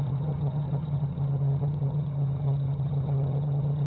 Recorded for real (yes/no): no